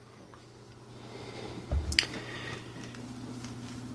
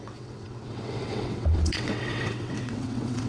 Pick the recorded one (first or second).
first